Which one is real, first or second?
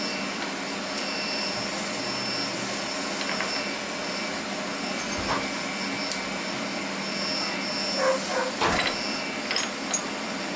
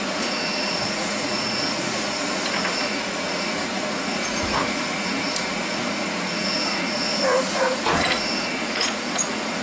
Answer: first